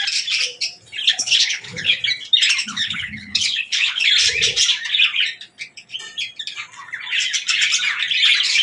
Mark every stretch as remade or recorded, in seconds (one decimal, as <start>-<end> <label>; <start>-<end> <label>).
0.0-1.1 recorded; 1.1-2.0 remade; 2.0-2.6 recorded; 2.6-4.1 remade; 4.1-8.6 recorded

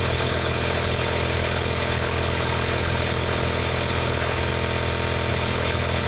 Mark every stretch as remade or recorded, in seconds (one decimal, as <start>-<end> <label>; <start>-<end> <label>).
0.0-4.5 remade; 4.5-5.3 recorded; 5.3-6.1 remade

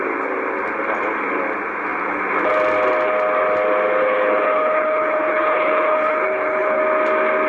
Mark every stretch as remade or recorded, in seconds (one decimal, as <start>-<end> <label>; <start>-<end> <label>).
0.0-4.0 recorded; 4.0-6.8 remade; 6.8-7.5 recorded

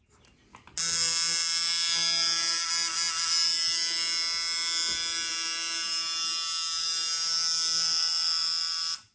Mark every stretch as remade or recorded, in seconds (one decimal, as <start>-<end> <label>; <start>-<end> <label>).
0.0-9.1 recorded

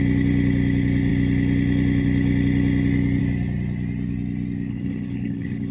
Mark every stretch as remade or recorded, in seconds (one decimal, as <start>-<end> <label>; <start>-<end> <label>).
0.0-4.7 recorded; 4.7-5.7 remade

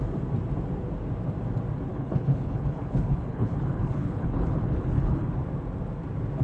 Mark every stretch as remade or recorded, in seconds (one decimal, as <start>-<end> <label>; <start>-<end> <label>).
0.0-1.9 recorded; 1.9-5.3 remade; 5.3-6.4 recorded

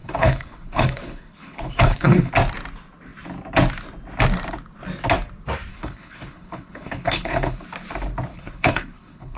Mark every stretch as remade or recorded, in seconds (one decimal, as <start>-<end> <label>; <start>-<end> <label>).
0.0-2.3 remade; 2.3-5.7 recorded; 5.7-7.6 remade; 7.6-8.3 recorded; 8.3-9.4 remade

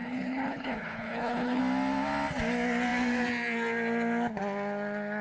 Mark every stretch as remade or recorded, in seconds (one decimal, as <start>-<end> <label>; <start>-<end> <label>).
0.0-1.6 remade; 1.6-5.2 recorded